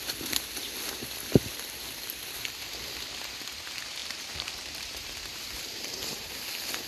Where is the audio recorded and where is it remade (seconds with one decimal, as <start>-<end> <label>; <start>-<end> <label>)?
0.0-4.0 recorded; 4.0-6.3 remade; 6.3-6.9 recorded